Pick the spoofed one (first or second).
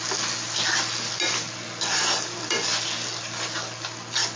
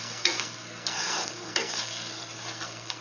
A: second